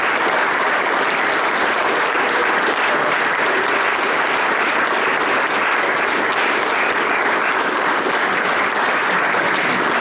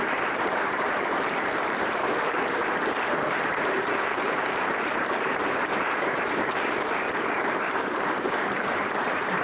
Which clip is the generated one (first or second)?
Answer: second